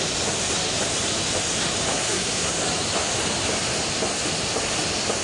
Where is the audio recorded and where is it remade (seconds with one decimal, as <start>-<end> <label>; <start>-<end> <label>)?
0.0-1.9 recorded; 1.9-2.5 remade; 2.5-5.2 recorded